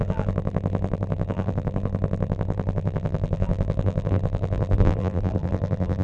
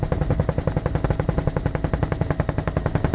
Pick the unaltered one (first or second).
second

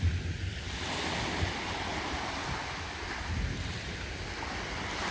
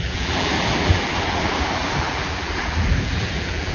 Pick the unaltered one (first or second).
first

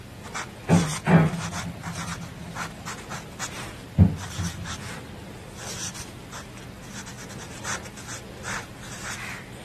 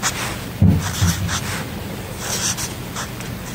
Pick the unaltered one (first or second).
first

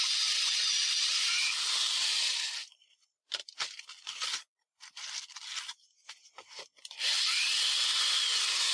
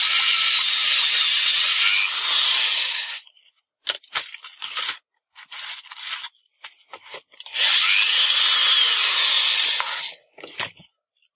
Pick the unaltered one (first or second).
second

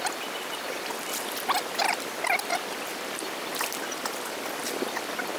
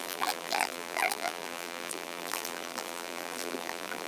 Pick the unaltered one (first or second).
first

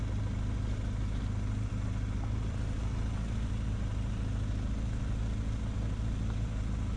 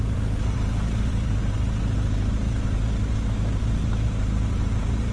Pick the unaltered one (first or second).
first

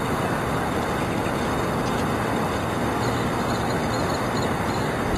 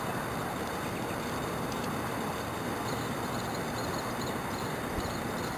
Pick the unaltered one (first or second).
first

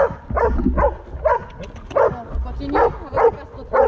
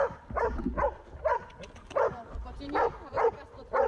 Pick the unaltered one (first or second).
first